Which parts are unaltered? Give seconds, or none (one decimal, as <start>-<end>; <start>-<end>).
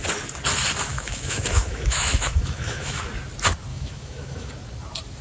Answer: 0.0-0.9; 3.1-3.7; 4.5-5.2